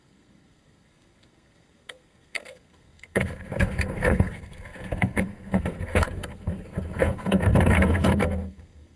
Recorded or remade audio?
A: remade